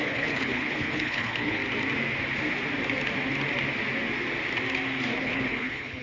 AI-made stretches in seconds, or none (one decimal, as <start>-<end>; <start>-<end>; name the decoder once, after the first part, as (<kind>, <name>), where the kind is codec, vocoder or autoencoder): 0.0-1.6 (codec, HILCodec); 5.2-6.0